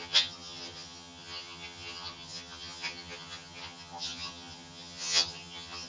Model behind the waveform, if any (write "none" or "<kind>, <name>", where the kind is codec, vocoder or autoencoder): vocoder, HiFi-GAN